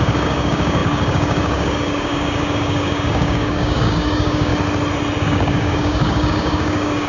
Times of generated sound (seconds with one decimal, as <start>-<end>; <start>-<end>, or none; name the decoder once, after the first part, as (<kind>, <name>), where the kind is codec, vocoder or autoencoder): 0.0-4.5 (codec, DAC); 5.2-7.1

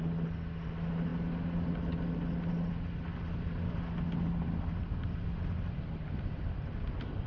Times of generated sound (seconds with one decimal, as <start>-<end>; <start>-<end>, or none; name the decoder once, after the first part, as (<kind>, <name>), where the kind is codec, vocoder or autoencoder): none

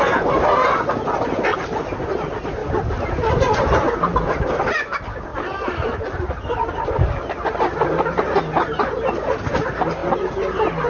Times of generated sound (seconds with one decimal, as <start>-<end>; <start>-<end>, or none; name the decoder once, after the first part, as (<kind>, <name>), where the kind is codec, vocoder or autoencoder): none

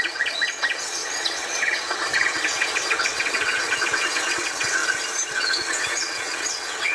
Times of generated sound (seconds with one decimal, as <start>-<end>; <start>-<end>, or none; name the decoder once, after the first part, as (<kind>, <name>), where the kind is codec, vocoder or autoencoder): 0.0-4.8 (vocoder, WaveNeXt); 5.3-6.9

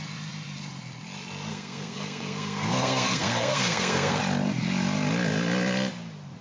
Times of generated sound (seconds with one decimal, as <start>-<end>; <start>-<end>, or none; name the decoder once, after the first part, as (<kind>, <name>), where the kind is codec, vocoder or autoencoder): 1.5-4.2 (codec, SNAC)

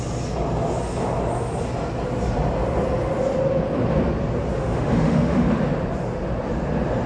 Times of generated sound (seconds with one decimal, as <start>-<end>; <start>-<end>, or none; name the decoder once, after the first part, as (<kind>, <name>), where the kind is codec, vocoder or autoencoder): 4.6-5.5 (autoencoder, DAC-VAE)

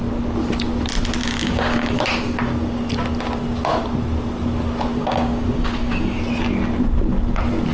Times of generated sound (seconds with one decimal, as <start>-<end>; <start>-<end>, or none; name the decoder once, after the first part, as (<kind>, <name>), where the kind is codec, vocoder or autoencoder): 1.2-2.0 (codec, DAC); 5.0-6.2

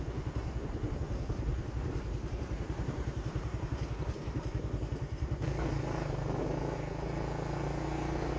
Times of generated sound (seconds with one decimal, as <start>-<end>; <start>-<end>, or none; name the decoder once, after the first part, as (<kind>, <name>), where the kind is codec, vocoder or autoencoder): 0.4-0.9 (vocoder, BigVGAN v2); 1.5-6.2